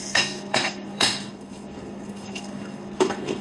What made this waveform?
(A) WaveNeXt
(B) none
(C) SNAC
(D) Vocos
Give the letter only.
C